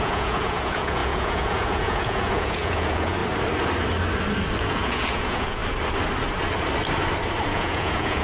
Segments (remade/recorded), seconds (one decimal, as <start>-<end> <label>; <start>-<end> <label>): 0.0-3.2 remade; 3.2-4.6 recorded; 4.6-5.6 remade; 5.6-7.5 recorded; 7.5-8.2 remade